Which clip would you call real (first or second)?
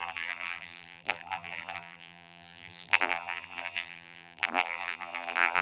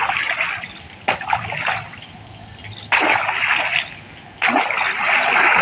second